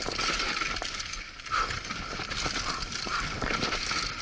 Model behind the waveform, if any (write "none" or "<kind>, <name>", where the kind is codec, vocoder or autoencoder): none